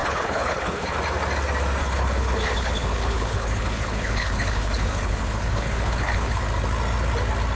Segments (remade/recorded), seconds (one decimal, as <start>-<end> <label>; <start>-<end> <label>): 0.0-1.0 remade; 1.0-1.8 recorded; 1.8-6.4 remade; 6.4-7.6 recorded